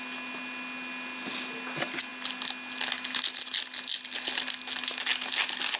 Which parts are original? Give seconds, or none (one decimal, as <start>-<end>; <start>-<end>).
0.0-5.8